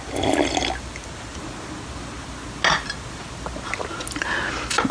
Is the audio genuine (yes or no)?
yes